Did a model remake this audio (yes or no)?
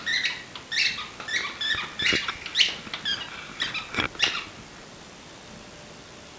no